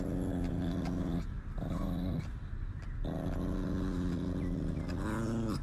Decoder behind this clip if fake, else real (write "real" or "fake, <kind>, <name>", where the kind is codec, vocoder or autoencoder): real